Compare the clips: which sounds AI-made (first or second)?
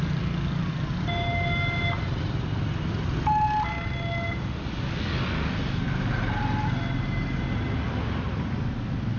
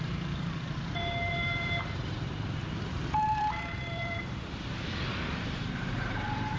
second